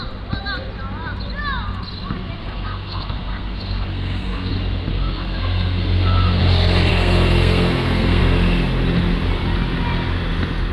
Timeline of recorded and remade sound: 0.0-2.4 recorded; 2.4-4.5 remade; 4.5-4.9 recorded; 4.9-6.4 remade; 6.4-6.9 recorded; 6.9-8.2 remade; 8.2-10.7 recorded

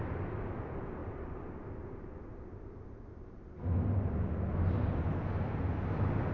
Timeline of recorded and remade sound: 0.0-6.3 recorded